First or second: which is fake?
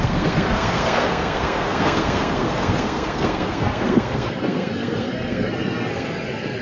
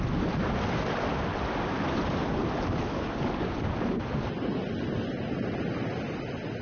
first